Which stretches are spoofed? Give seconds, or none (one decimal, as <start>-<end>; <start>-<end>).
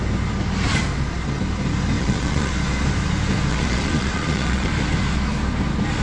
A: 2.0-2.5; 3.5-4.7